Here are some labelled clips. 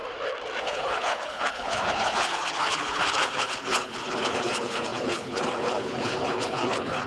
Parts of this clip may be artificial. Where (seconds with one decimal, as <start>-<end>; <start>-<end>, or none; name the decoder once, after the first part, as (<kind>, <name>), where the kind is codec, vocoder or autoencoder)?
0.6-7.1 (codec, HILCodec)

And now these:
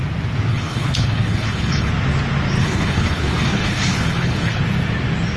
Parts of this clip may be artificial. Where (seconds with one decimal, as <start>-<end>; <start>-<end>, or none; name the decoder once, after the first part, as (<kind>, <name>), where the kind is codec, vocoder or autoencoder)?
0.5-1.9 (codec, HILCodec); 2.6-4.6

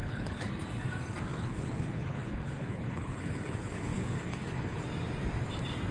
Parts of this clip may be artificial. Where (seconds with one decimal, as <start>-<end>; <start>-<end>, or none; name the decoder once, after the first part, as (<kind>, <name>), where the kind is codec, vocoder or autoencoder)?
0.0-0.5 (codec, HILCodec); 1.3-4.8